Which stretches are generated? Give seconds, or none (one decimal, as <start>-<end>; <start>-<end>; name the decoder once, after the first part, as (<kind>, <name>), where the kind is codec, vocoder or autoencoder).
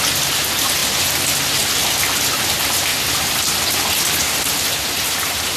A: none